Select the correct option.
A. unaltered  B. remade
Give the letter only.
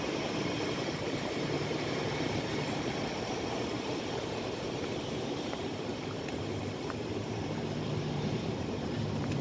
B